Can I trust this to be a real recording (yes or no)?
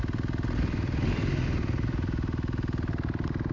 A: yes